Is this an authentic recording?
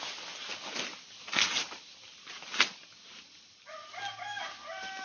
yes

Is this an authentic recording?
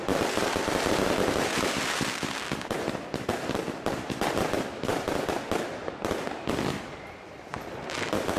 no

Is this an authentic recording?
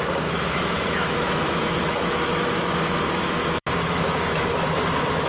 no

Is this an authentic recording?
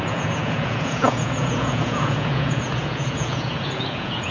no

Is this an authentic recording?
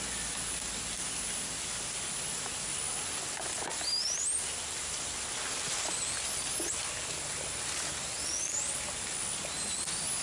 yes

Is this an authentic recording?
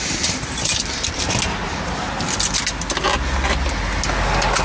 yes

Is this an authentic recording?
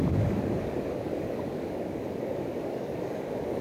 no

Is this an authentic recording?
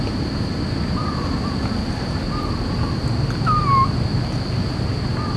yes